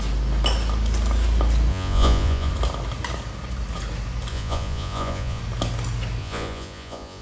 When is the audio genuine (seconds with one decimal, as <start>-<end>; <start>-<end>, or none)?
0.0-1.7; 2.5-4.3; 5.4-6.2

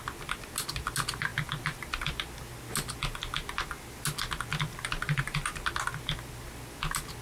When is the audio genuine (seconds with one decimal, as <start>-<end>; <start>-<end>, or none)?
0.0-7.2

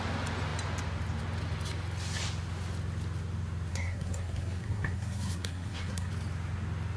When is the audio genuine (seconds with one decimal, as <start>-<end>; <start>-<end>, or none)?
0.0-3.7; 6.1-7.0

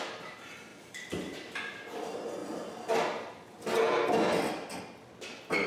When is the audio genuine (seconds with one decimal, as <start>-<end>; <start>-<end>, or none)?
0.0-5.7

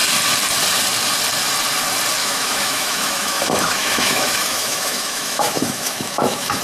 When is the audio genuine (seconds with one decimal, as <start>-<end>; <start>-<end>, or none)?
0.0-2.2

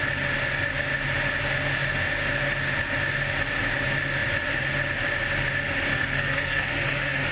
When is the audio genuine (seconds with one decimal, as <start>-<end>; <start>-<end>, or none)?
0.0-5.9

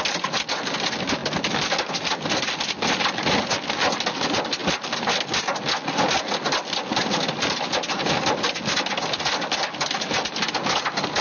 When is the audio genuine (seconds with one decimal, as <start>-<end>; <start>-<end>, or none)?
0.0-11.2